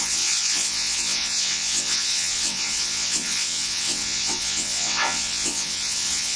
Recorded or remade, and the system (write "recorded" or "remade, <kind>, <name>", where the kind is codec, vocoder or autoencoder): remade, vocoder, WaveNeXt